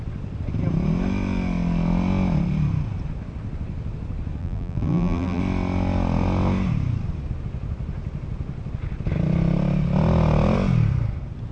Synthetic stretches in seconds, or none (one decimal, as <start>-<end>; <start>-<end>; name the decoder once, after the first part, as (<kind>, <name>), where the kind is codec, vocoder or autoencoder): 4.4-5.4 (vocoder, BigVGAN v2)